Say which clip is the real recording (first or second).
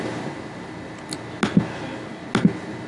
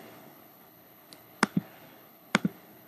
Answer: first